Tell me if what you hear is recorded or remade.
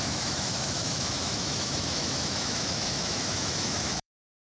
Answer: remade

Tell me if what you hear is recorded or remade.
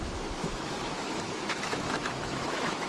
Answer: remade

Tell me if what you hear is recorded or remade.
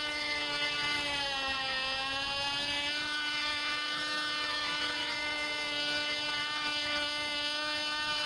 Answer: remade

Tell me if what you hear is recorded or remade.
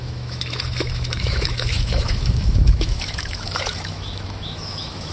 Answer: remade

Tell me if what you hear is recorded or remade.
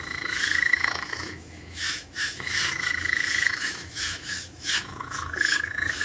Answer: remade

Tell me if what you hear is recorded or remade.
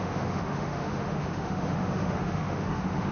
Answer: remade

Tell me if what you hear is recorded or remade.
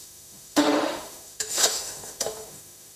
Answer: remade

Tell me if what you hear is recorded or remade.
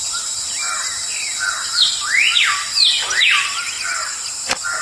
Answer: recorded